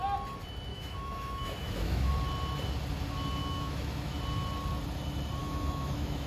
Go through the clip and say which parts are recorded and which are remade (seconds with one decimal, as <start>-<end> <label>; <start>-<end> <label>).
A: 0.0-0.7 recorded; 0.7-2.1 remade; 2.1-3.4 recorded; 3.4-4.2 remade; 4.2-5.4 recorded; 5.4-6.3 remade